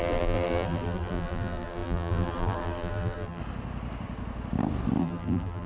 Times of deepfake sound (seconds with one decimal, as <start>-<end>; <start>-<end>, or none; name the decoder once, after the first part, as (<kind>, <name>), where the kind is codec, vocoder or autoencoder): 0.0-3.4 (vocoder, BigVGAN v2); 5.0-5.7